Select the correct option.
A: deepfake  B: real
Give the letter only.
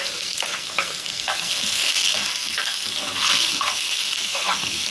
A